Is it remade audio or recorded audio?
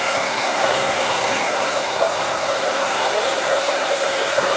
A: remade